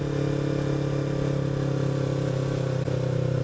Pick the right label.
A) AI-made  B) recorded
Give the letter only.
B